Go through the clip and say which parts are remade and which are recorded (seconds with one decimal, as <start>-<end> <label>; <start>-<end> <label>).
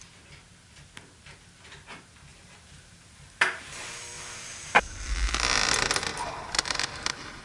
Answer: 0.0-2.3 recorded; 2.3-5.1 remade; 5.1-6.1 recorded; 6.1-6.8 remade; 6.8-7.4 recorded